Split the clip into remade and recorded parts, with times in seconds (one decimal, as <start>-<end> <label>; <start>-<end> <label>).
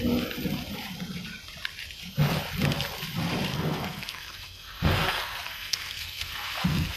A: 0.0-3.5 recorded; 3.5-7.0 remade